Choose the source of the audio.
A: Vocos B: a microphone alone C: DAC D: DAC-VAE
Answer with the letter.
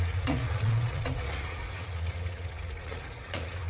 A